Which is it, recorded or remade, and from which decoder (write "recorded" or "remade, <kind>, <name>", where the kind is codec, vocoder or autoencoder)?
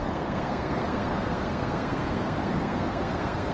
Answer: remade, codec, SNAC